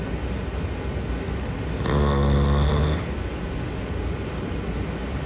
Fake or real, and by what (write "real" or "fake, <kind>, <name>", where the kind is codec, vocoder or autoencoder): real